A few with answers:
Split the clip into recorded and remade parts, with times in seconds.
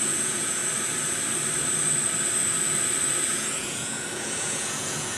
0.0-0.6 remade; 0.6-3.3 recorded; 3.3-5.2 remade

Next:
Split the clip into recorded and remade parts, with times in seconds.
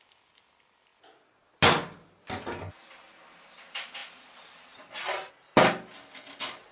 0.0-6.7 recorded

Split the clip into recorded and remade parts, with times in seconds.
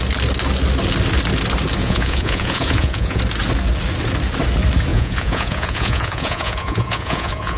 0.0-1.8 recorded; 1.8-3.2 remade; 3.2-4.9 recorded; 4.9-7.6 remade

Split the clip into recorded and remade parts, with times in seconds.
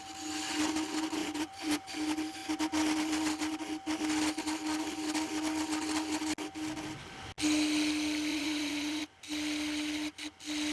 0.0-1.2 recorded; 1.2-1.9 remade; 1.9-8.3 recorded; 8.3-9.0 remade; 9.0-10.7 recorded